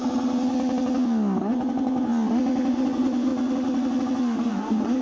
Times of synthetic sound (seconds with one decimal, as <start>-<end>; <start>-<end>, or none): 1.5-2.1; 2.7-3.3; 4.5-5.0

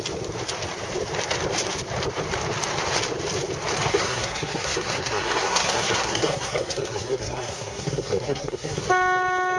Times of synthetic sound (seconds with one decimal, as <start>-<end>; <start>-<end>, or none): 3.9-8.8

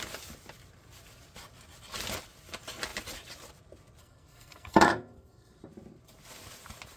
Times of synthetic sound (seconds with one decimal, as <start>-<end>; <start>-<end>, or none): 4.0-5.6